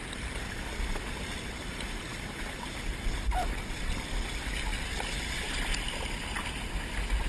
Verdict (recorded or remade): recorded